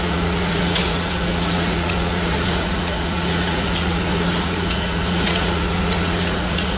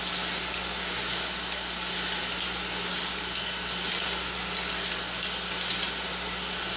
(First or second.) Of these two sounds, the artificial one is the first